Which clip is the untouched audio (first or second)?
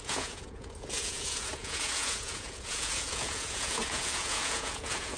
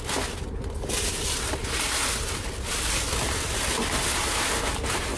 second